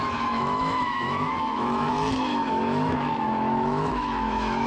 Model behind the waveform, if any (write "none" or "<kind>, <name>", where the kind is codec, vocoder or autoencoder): autoencoder, DAC-VAE